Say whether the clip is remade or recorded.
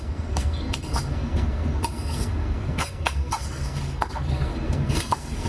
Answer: remade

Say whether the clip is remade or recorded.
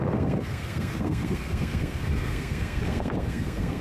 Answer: remade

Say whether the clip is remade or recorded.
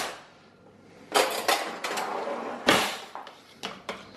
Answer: recorded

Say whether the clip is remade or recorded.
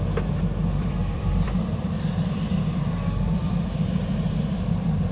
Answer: remade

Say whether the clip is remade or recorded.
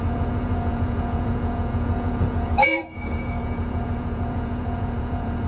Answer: remade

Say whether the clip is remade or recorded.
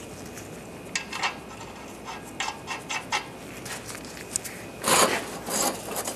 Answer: recorded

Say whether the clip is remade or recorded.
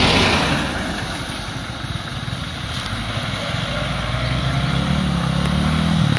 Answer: recorded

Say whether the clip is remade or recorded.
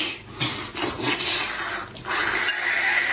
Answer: recorded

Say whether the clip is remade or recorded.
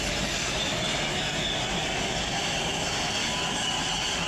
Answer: recorded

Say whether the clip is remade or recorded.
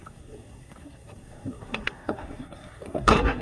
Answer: remade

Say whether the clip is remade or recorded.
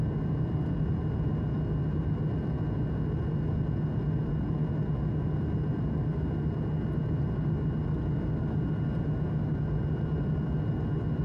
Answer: recorded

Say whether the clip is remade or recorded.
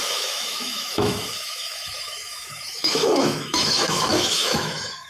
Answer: remade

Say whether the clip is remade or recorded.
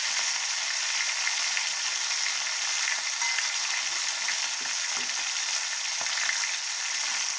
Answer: recorded